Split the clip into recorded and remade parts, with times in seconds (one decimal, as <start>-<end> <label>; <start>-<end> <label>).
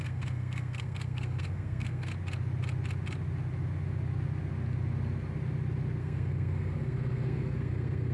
0.0-2.1 remade; 2.1-6.0 recorded; 6.0-8.1 remade